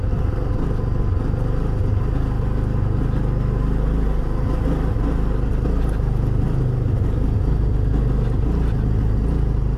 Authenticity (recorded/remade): recorded